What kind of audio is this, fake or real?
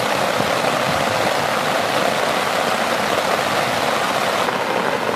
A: real